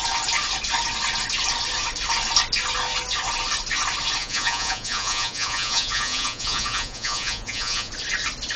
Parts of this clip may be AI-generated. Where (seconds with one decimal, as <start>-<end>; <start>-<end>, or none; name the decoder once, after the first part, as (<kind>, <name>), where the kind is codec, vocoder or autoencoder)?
4.2-7.9 (vocoder, Vocos)